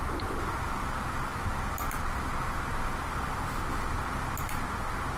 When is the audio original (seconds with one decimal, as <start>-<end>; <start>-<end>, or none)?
0.0-5.2